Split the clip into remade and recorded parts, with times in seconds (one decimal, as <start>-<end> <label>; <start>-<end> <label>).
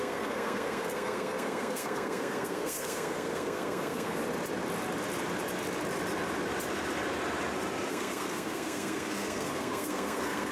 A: 0.0-4.2 remade; 4.2-7.9 recorded; 7.9-10.5 remade